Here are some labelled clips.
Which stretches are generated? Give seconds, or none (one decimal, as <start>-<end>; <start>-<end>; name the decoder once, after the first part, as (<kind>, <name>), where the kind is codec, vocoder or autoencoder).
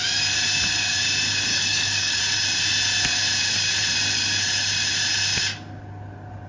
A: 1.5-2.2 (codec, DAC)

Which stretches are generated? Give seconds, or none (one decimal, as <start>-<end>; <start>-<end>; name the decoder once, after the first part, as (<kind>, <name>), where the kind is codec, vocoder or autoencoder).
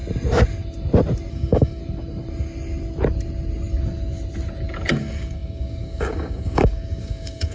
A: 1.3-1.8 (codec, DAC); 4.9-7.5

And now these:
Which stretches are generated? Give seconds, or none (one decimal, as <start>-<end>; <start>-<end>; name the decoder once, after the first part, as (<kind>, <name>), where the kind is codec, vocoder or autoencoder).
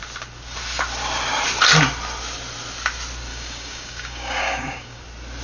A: 3.3-5.0 (codec, DAC)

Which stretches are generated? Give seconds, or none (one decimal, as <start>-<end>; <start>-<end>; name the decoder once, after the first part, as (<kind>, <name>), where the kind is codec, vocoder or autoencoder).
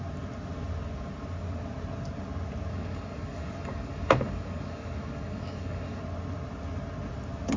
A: 2.7-6.0 (codec, DAC)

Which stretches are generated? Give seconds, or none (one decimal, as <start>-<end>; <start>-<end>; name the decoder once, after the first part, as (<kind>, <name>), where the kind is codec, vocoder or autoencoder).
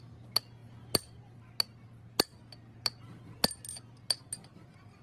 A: none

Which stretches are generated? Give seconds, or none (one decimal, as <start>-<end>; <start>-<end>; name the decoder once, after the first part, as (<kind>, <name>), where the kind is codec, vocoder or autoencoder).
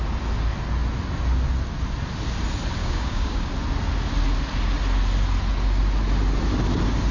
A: 2.8-3.5 (codec, DAC)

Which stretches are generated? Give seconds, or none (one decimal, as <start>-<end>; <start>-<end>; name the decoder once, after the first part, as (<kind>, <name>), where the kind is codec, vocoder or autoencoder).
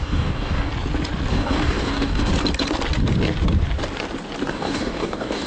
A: 0.0-0.7 (codec, DAC); 1.3-2.3; 4.5-5.5